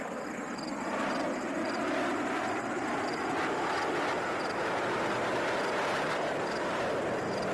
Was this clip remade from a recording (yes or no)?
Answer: no